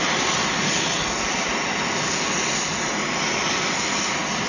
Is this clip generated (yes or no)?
no